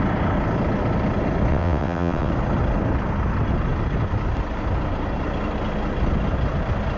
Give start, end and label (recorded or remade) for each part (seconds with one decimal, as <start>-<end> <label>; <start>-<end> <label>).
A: 0.0-1.5 recorded; 1.5-2.3 remade; 2.3-7.0 recorded

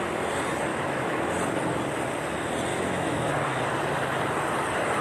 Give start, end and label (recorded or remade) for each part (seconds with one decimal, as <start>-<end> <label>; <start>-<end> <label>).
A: 0.0-0.7 recorded; 0.7-1.2 remade; 1.2-2.7 recorded; 2.7-3.3 remade; 3.3-5.0 recorded